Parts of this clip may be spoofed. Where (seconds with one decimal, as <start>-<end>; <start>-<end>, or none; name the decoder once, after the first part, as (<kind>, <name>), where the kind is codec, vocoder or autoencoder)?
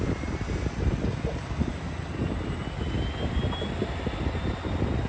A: none